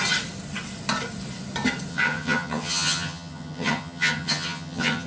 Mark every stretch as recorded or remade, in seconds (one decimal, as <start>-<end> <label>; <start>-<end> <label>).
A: 0.0-1.9 recorded; 1.9-5.1 remade